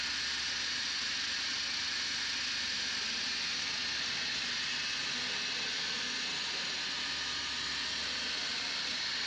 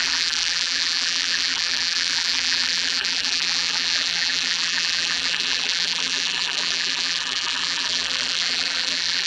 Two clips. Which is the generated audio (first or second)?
second